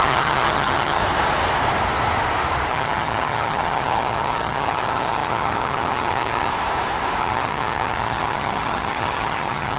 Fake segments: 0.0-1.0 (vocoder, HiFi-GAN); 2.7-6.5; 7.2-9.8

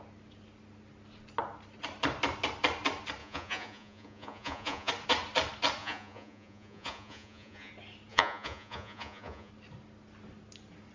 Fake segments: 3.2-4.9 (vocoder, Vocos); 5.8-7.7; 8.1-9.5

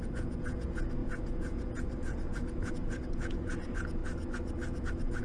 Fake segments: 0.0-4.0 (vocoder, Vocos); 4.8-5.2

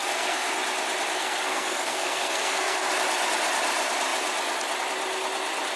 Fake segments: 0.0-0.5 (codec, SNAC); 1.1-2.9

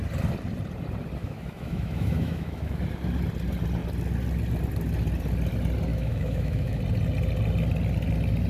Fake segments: 1.2-2.8 (autoencoder, DAC-VAE); 5.9-6.8